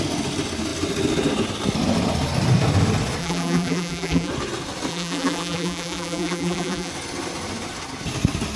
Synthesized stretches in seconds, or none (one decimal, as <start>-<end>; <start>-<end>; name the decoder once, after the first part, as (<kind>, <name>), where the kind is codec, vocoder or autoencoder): 3.2-4.3 (vocoder, BigVGAN v2); 4.9-6.9

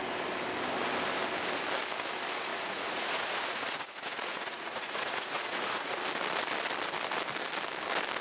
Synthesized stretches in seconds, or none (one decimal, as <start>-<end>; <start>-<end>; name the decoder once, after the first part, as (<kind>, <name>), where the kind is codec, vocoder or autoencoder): 2.5-6.0 (vocoder, Vocos)

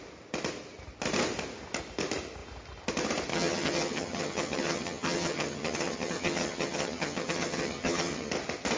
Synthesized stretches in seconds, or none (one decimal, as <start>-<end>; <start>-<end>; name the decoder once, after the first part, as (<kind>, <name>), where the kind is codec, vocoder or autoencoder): 3.3-8.3 (vocoder, HiFi-GAN)

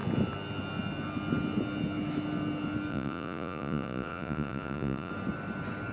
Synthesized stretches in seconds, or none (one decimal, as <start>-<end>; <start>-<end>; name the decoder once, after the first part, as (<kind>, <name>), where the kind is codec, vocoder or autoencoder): 2.9-5.1 (vocoder, Vocos)

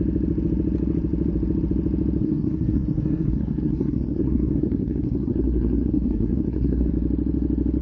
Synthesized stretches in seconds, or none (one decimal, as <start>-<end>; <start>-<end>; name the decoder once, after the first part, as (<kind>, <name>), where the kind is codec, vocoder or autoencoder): 2.2-6.9 (codec, SNAC)

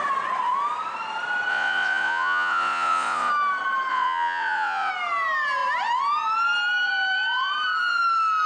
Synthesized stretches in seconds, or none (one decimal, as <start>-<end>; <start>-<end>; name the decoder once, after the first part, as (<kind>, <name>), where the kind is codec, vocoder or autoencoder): 1.5-3.3 (vocoder, Vocos); 3.9-4.9